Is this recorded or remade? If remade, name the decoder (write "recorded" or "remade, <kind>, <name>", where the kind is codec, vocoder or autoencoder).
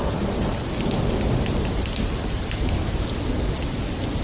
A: recorded